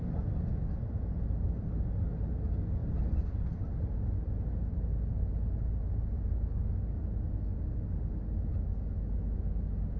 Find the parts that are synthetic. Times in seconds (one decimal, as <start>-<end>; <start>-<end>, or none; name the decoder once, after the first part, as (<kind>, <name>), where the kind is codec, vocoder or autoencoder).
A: none